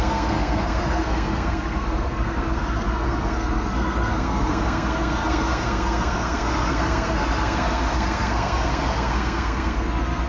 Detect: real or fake fake